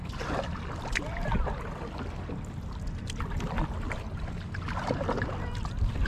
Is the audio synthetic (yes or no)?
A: no